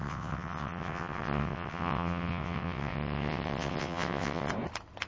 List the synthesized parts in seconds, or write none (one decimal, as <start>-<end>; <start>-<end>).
0.0-4.5